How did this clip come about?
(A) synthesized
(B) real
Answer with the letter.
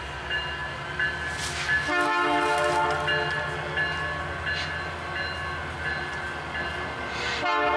B